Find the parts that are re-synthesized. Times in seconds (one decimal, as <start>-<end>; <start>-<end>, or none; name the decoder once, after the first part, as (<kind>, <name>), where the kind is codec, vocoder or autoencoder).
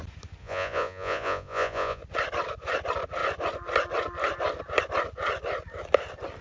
0.4-2.0 (vocoder, Vocos)